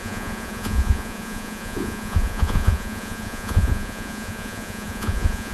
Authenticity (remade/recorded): remade